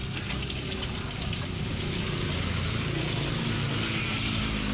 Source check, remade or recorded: recorded